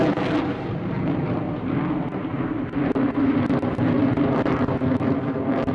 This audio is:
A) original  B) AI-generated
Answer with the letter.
A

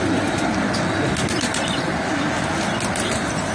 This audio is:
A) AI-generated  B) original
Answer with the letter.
B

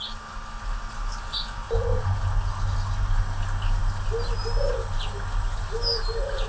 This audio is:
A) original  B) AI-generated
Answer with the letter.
A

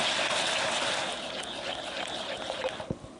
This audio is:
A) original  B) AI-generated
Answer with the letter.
A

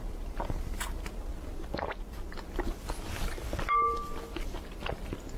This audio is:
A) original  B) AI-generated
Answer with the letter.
A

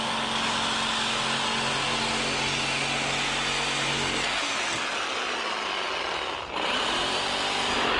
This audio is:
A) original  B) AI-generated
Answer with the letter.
A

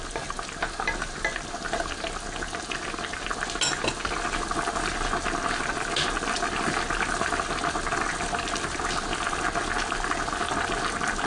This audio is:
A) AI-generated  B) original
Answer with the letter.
B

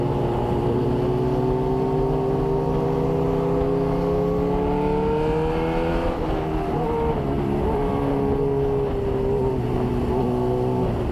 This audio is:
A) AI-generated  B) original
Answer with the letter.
B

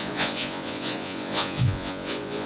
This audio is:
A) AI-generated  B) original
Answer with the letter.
A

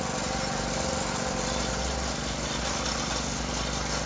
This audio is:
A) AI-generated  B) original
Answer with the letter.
B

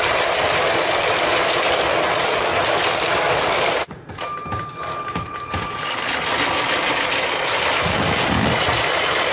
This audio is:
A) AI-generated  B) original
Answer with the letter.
B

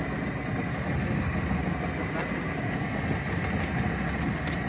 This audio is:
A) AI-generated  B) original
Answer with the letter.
B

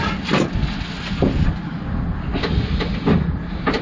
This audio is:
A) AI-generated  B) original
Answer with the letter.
B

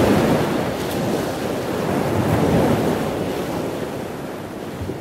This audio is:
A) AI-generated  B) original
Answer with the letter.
B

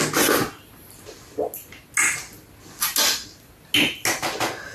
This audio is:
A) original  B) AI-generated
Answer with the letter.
A